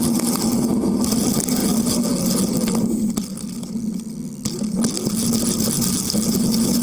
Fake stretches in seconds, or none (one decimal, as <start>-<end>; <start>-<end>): none